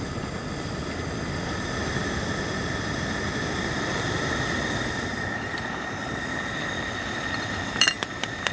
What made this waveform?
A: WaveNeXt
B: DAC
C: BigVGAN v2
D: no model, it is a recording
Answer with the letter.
C